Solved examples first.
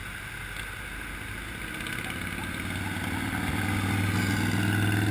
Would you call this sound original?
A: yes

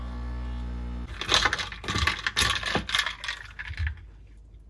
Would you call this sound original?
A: yes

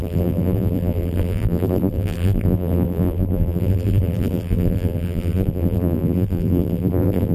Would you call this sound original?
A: no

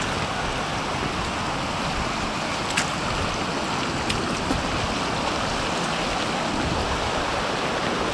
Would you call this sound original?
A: yes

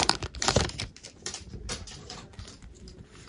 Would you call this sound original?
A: no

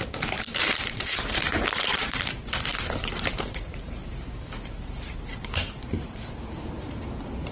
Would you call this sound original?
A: no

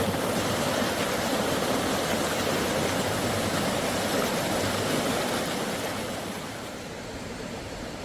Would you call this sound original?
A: no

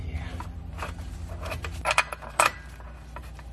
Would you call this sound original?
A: no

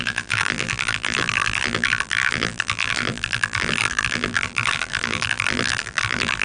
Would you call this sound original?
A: no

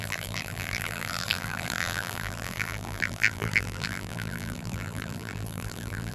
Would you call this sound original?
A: no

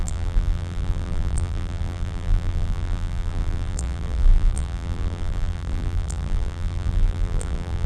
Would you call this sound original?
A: no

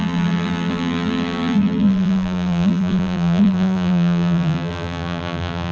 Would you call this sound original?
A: no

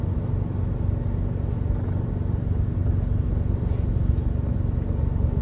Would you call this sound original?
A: yes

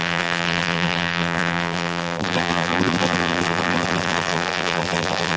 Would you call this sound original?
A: no